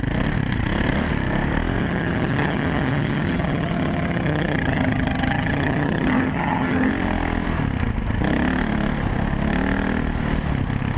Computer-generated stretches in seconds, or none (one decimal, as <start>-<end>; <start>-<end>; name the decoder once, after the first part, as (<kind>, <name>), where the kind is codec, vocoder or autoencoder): 1.8-6.9 (vocoder, HiFi-GAN)

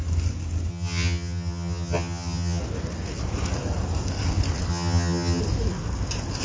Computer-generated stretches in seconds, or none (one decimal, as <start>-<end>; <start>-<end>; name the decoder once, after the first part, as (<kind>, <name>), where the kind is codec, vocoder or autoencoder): 0.7-2.6 (vocoder, HiFi-GAN); 4.7-5.4

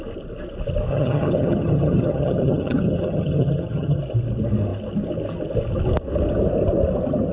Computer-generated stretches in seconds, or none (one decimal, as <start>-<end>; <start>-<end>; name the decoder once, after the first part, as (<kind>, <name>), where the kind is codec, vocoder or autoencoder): 0.9-4.0 (vocoder, HiFi-GAN)

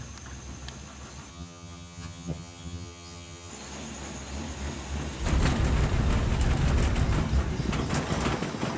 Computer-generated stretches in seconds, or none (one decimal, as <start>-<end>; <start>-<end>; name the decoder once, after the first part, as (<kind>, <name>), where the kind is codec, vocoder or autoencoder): 1.3-3.5 (vocoder, HiFi-GAN)